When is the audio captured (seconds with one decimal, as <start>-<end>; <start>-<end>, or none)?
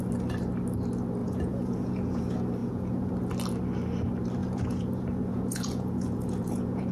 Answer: 0.0-1.2; 2.2-2.6; 3.1-4.4